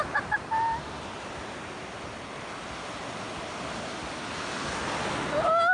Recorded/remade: recorded